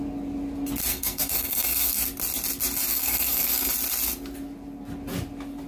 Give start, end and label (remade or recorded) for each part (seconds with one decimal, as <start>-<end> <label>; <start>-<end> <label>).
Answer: 0.0-0.9 recorded; 0.9-2.0 remade; 2.0-2.9 recorded; 2.9-3.7 remade; 3.7-5.7 recorded